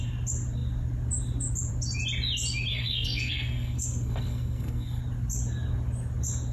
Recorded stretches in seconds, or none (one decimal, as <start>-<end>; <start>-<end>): 0.0-2.7; 5.0-6.5